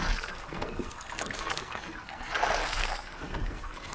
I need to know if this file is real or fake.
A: fake